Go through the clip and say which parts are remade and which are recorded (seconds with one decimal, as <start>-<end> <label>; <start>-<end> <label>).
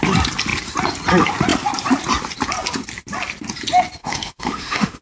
0.0-4.0 recorded; 4.0-5.0 remade